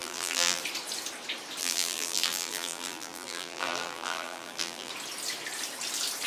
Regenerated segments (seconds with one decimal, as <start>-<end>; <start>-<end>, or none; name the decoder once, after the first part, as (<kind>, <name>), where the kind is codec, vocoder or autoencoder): 0.0-0.6 (vocoder, BigVGAN v2); 1.6-4.9